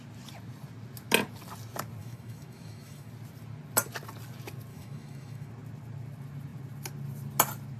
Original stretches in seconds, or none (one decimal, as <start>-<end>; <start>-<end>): 0.0-2.0; 3.1-4.7; 5.5-7.8